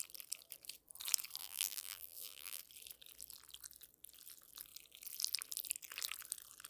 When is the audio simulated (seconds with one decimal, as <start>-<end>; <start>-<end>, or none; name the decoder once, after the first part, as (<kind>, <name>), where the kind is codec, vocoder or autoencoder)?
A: 1.4-2.6 (vocoder, BigVGAN v2)